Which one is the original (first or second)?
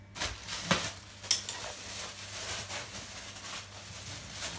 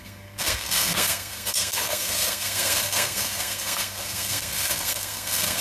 first